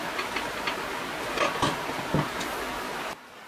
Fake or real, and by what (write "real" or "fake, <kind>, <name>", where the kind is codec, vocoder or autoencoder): real